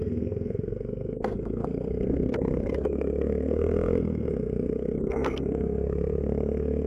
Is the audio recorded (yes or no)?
no